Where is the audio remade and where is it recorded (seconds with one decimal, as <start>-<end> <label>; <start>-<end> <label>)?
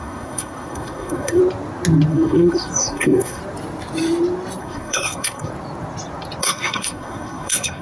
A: 0.0-1.4 remade; 1.4-2.1 recorded; 2.1-3.4 remade; 3.4-4.6 recorded; 4.6-5.5 remade; 5.5-6.4 recorded; 6.4-7.8 remade